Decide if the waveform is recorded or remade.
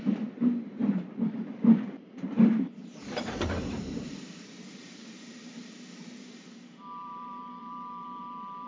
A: remade